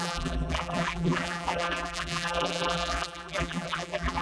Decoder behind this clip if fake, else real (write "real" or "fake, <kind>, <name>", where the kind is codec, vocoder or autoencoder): fake, vocoder, BigVGAN v2